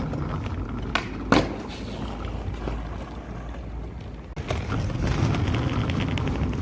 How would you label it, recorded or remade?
recorded